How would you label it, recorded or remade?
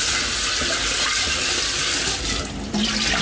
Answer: recorded